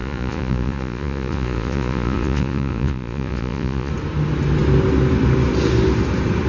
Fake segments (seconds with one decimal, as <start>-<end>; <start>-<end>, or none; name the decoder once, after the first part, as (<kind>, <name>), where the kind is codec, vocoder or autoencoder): 0.0-3.9 (vocoder, Vocos)